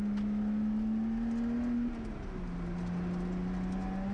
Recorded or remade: recorded